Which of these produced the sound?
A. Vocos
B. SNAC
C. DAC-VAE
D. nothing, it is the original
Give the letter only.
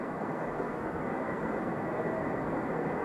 B